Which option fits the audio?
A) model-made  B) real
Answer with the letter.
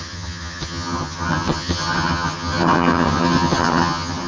A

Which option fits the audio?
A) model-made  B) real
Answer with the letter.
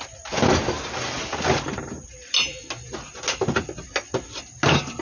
B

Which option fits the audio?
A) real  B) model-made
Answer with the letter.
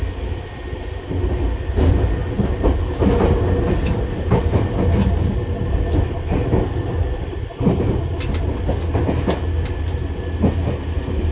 A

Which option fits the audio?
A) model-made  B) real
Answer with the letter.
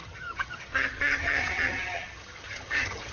A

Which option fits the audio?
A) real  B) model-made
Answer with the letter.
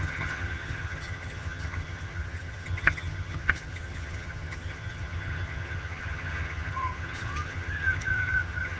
B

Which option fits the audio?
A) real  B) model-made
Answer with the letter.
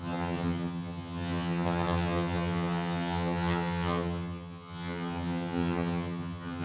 B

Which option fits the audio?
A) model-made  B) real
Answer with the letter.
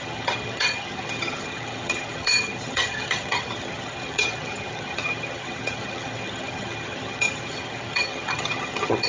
A